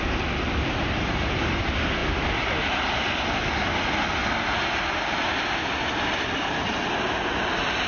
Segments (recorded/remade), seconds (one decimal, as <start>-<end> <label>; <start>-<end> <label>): 0.0-7.9 recorded